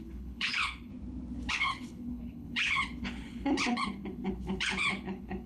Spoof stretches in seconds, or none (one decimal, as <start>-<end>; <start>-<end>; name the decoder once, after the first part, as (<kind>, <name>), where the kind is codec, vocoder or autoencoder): 0.0-0.9 (codec, HILCodec); 1.5-5.5